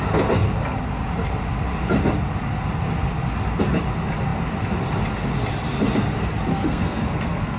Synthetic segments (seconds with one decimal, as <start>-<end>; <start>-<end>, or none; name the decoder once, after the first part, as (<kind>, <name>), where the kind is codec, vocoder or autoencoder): 6.5-7.6 (codec, SNAC)